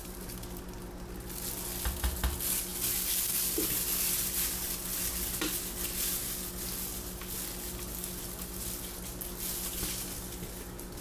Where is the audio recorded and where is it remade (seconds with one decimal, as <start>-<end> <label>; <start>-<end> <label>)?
0.0-11.0 recorded